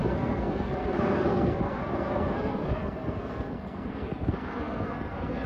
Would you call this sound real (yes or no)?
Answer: no